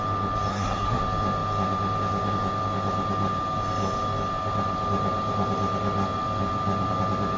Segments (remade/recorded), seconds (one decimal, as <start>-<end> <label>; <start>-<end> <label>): 0.0-0.5 recorded; 0.5-1.0 remade; 1.0-7.4 recorded